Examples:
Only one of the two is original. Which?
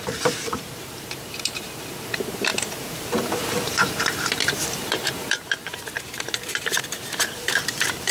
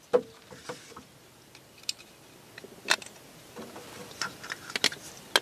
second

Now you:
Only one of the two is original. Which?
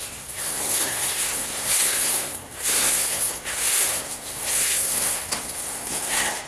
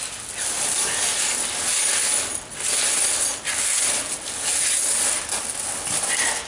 second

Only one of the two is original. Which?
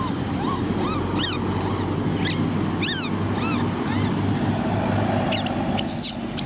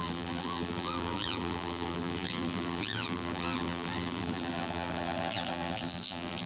first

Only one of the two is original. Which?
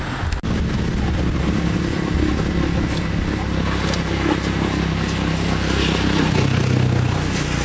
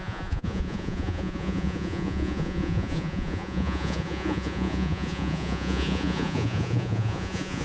first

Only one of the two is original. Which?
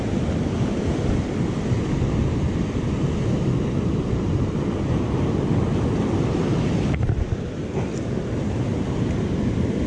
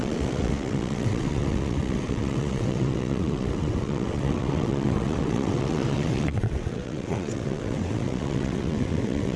first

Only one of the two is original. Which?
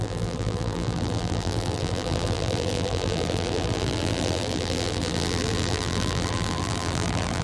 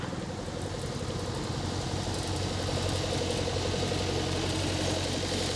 second